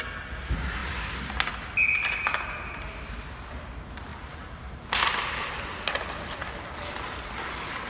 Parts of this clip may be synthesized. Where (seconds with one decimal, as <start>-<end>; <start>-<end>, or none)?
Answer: 4.1-4.7